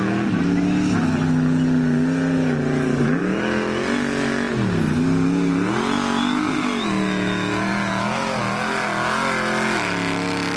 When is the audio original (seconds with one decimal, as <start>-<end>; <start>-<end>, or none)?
0.0-10.6